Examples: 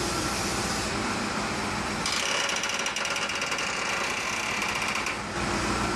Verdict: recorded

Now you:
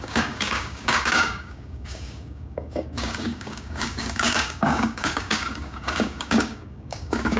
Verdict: remade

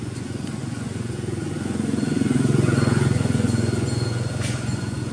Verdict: remade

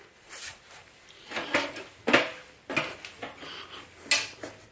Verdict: recorded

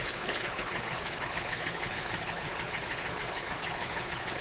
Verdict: remade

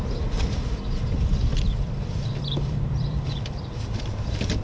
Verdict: remade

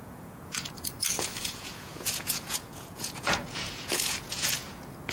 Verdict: remade